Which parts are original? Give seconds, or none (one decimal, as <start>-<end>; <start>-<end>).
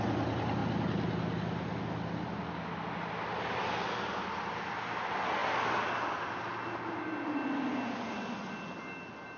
0.0-9.4